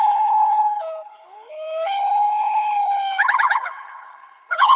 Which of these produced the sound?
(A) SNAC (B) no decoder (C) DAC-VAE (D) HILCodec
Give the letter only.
D